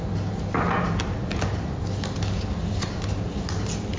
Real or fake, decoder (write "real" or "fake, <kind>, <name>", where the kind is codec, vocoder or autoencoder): real